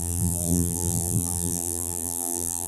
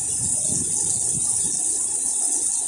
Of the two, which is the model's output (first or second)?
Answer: first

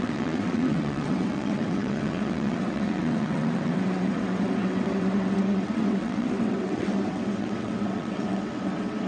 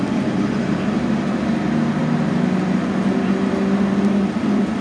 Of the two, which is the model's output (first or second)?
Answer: first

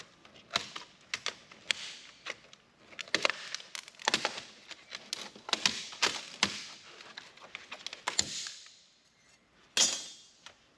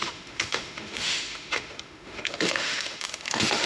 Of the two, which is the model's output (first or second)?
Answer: second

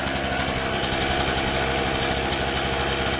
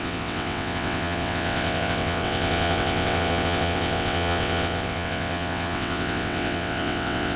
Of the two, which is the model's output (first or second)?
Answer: second